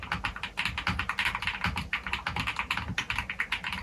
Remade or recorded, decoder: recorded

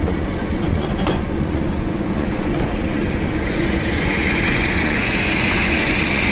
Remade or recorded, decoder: remade, vocoder, Vocos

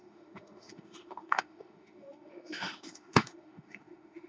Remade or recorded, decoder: remade, autoencoder, DAC-VAE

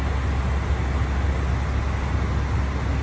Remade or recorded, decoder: recorded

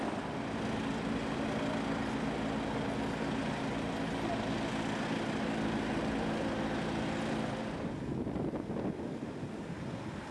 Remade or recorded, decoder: recorded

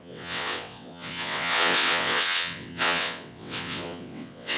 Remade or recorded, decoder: remade, vocoder, WaveNeXt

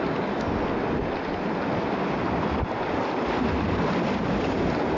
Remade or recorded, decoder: recorded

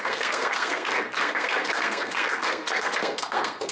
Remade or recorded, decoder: remade, codec, SNAC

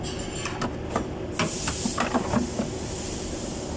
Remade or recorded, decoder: recorded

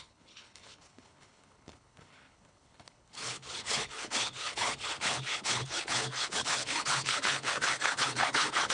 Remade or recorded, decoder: remade, codec, HILCodec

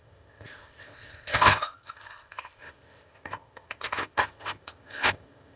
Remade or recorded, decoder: remade, codec, ZipCodec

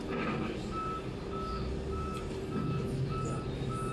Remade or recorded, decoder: recorded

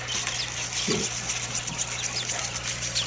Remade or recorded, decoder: recorded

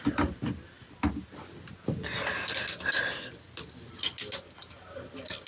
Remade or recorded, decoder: recorded